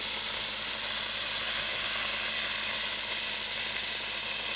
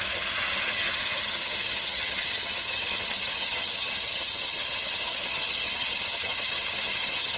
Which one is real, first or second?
first